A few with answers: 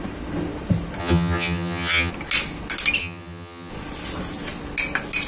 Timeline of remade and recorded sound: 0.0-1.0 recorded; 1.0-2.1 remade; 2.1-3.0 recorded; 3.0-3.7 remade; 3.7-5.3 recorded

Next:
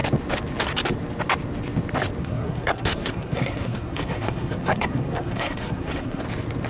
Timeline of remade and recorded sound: 0.0-2.2 recorded; 2.2-6.2 remade; 6.2-6.7 recorded